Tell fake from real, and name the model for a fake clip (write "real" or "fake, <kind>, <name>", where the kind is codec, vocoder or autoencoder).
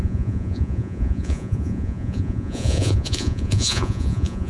fake, vocoder, Vocos